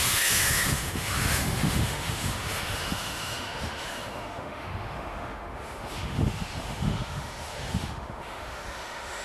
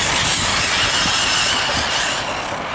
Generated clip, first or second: first